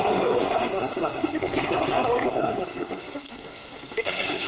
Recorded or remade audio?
remade